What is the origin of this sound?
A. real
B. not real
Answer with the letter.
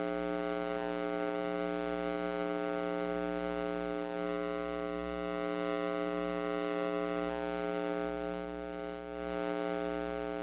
B